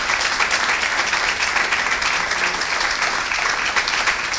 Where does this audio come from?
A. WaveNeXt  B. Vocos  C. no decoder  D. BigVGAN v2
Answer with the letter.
C